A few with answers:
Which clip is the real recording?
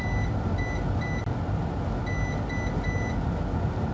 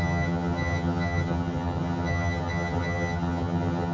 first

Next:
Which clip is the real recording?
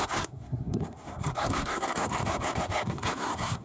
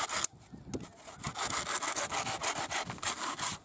second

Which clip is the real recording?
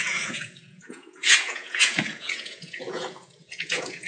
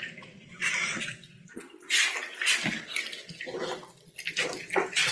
second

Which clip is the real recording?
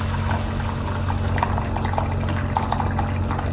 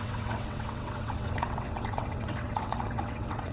first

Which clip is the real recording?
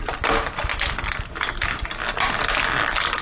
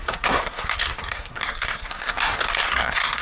first